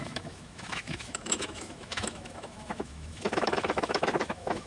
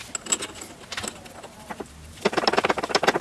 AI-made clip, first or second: first